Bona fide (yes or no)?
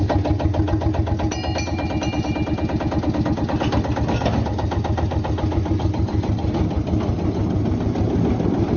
yes